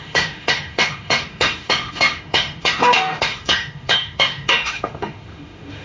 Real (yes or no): no